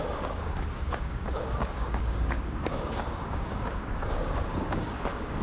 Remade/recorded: remade